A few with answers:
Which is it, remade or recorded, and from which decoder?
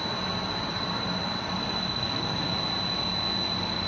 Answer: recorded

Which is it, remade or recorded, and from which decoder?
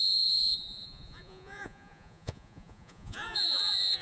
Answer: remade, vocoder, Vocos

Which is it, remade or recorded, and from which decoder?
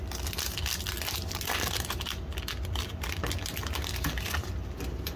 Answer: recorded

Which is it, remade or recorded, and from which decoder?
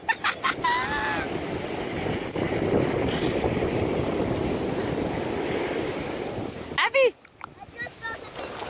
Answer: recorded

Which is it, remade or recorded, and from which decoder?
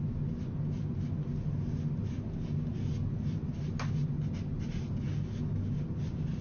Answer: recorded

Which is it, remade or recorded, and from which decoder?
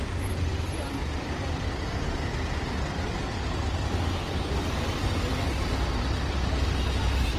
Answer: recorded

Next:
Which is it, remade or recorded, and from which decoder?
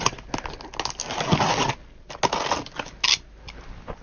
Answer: recorded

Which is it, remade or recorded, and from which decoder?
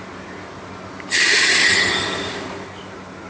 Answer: recorded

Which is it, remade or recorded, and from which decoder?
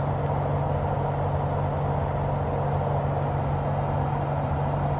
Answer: recorded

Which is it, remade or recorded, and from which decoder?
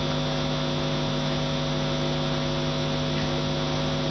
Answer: recorded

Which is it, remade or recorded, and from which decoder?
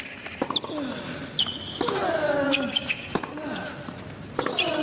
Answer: recorded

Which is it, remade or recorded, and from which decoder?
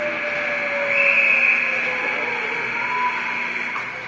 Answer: recorded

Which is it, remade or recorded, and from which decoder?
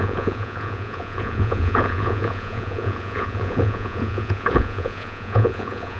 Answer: remade, vocoder, Vocos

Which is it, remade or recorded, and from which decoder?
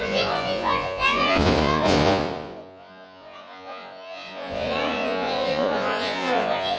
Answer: remade, vocoder, Vocos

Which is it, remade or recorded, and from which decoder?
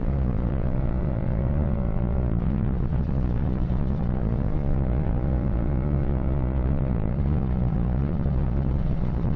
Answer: remade, vocoder, Vocos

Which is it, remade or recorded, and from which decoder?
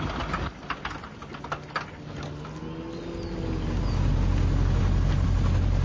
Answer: recorded